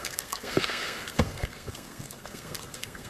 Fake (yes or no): yes